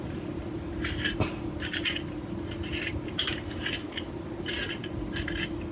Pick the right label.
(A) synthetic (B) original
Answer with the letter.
B